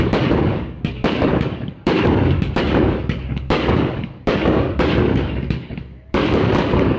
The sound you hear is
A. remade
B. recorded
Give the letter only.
A